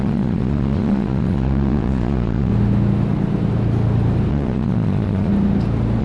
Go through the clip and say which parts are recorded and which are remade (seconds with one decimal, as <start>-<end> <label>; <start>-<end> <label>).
0.0-2.5 remade; 2.5-4.3 recorded; 4.3-5.3 remade; 5.3-6.0 recorded